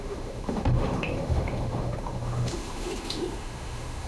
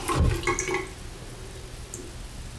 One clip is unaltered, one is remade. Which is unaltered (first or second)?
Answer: second